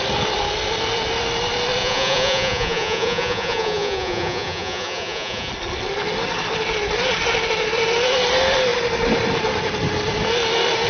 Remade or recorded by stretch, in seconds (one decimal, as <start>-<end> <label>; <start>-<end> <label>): 0.0-1.8 recorded; 1.8-5.5 remade; 5.5-10.9 recorded